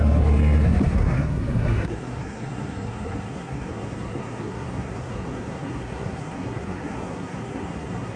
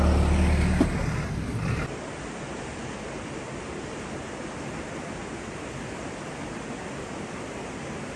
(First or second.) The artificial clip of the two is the first